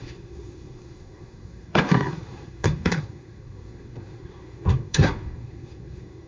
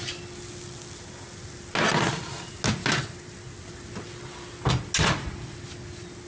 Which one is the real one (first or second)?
second